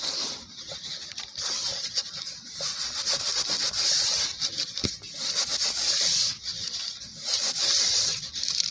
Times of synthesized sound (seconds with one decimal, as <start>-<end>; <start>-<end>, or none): none